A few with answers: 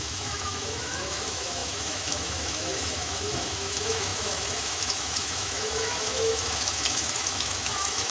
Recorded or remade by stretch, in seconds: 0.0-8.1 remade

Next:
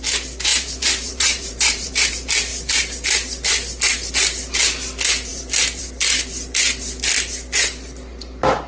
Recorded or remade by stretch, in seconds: 0.0-0.5 recorded; 0.5-2.1 remade; 2.1-8.7 recorded

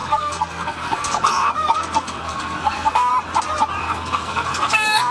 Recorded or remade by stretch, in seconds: 0.0-3.1 remade; 3.1-3.8 recorded; 3.8-5.1 remade

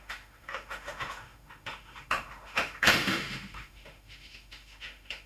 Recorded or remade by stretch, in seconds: 0.0-5.3 remade

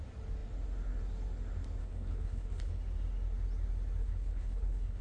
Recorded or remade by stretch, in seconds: 0.0-1.8 recorded; 1.8-2.8 remade; 2.8-4.0 recorded; 4.0-5.0 remade

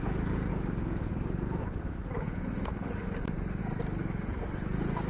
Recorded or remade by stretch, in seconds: 0.0-5.1 recorded